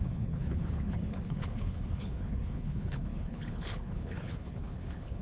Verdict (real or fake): fake